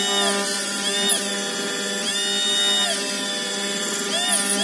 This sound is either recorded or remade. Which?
recorded